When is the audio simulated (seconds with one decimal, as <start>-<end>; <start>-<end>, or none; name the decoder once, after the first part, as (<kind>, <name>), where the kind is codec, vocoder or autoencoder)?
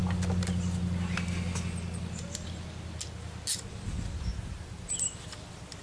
4.3-5.0 (vocoder, BigVGAN v2)